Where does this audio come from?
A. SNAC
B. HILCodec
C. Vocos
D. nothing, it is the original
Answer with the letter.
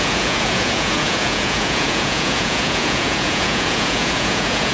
C